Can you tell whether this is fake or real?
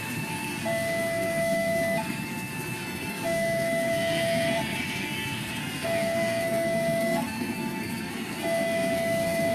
fake